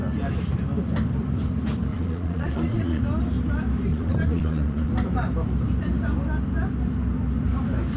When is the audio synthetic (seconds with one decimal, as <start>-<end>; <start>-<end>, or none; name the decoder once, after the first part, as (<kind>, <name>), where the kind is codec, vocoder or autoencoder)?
1.9-3.0 (vocoder, Vocos); 3.9-4.9